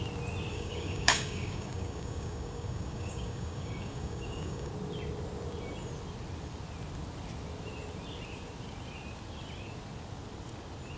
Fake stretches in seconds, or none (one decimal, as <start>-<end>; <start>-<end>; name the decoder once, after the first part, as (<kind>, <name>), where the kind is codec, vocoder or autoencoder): 0.5-4.7 (codec, DAC)